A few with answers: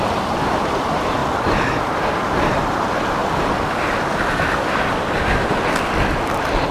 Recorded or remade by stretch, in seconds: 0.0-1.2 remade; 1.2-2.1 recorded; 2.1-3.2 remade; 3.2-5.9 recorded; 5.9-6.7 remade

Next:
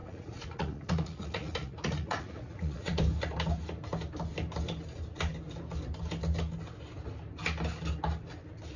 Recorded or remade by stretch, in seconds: 0.0-3.0 remade; 3.0-8.8 recorded

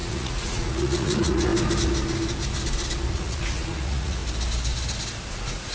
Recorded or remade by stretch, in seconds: 0.0-1.5 remade; 1.5-3.1 recorded; 3.1-4.2 remade; 4.2-5.3 recorded; 5.3-5.7 remade

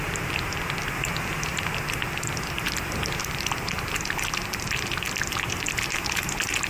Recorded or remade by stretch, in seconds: 0.0-1.5 recorded; 1.5-5.5 remade; 5.5-6.7 recorded